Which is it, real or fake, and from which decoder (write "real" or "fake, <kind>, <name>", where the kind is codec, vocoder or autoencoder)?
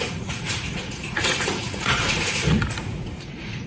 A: fake, vocoder, Vocos